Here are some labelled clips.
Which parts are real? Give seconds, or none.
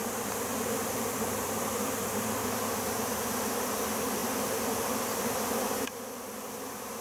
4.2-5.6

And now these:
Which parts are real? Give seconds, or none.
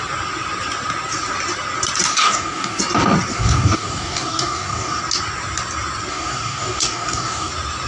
0.0-2.1; 2.8-3.3; 5.0-6.1; 7.5-7.9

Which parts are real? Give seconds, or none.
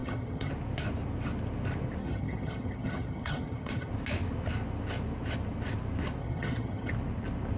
0.5-2.0; 3.9-6.2; 6.9-7.6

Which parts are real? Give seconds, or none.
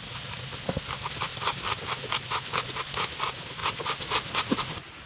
0.0-5.1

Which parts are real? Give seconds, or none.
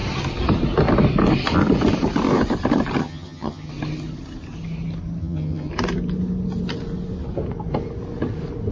0.0-3.0; 3.7-5.2; 5.7-8.7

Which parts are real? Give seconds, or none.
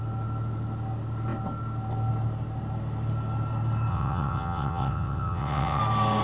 0.0-3.9; 5.8-6.2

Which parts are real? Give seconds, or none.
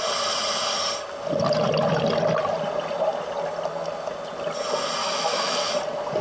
0.0-5.0; 5.7-6.2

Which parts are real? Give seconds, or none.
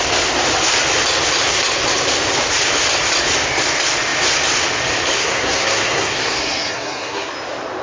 0.0-5.2; 7.3-7.8